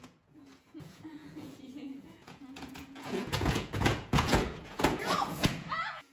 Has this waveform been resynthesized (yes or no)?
yes